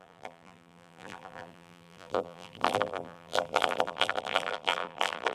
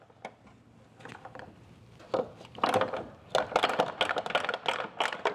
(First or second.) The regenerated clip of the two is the first